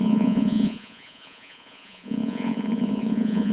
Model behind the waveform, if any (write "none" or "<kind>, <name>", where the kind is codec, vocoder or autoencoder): vocoder, Vocos